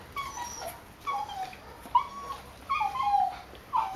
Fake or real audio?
real